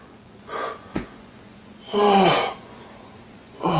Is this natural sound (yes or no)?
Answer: no